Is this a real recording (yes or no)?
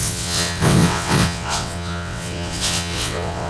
no